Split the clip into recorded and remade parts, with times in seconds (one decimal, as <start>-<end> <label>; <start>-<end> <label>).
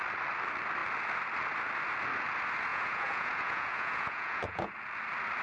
0.0-2.7 recorded; 2.7-4.7 remade; 4.7-5.4 recorded